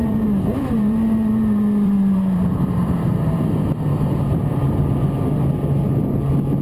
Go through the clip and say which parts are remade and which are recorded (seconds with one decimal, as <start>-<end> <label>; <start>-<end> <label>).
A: 0.0-3.4 remade; 3.4-3.9 recorded; 3.9-4.9 remade; 4.9-6.6 recorded